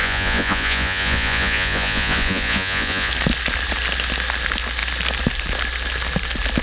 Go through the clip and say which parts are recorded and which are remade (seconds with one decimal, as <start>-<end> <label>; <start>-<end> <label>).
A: 0.0-3.1 remade; 3.1-6.6 recorded